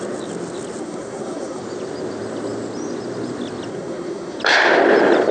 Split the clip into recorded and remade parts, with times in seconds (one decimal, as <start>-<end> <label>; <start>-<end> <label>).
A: 0.0-0.8 recorded; 0.8-1.6 remade; 1.6-3.7 recorded; 3.7-4.4 remade; 4.4-5.3 recorded